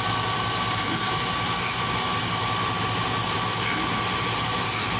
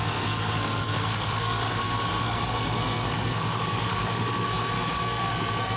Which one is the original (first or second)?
first